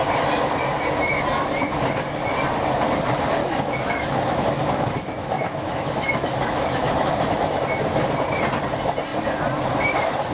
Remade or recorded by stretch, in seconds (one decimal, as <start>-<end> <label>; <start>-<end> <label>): 0.0-3.4 recorded; 3.4-7.1 remade; 7.1-10.3 recorded